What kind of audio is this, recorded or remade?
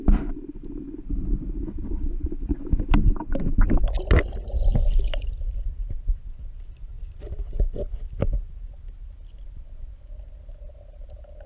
recorded